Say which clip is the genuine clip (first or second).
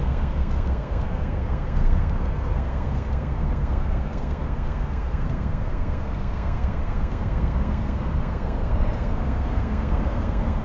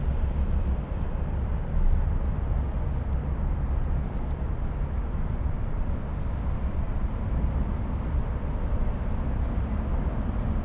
second